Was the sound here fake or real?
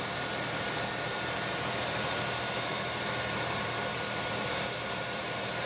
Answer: fake